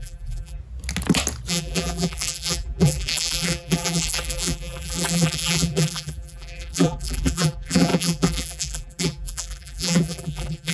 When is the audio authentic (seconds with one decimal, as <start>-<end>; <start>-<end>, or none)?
0.6-1.5